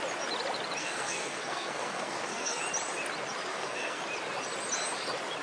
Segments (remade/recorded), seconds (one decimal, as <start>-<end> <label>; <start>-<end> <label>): 0.0-0.8 recorded; 0.8-2.6 remade; 2.6-3.5 recorded; 3.5-4.0 remade; 4.0-5.4 recorded